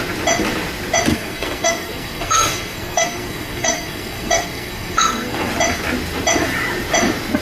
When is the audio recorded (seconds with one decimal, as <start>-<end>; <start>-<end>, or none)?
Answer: 0.0-1.1; 5.5-7.4